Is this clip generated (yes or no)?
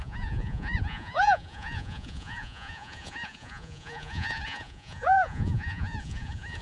yes